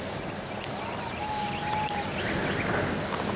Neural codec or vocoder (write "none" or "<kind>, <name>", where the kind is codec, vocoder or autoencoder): none